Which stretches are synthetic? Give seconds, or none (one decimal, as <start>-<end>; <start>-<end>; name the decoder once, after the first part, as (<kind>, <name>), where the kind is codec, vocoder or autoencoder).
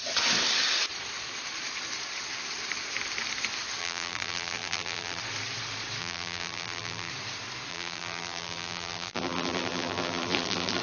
3.8-5.2 (vocoder, BigVGAN v2); 6.0-7.1; 7.7-10.8